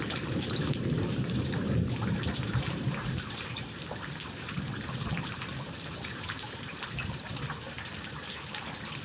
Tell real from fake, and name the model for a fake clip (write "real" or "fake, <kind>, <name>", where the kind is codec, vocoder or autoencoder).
fake, vocoder, BigVGAN v2